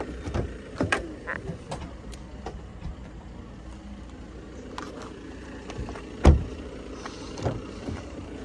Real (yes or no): no